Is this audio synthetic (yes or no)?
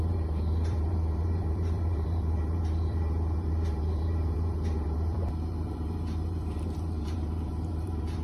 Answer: yes